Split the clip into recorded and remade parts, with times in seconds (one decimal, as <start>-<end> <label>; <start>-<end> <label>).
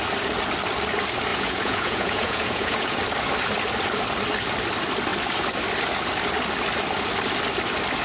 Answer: 0.0-1.3 recorded; 1.3-3.0 remade; 3.0-8.0 recorded